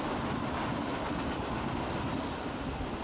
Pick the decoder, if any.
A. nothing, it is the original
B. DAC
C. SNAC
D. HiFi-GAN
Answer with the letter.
A